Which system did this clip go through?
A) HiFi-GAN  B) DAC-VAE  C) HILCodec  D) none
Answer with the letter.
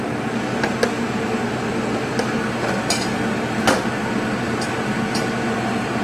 D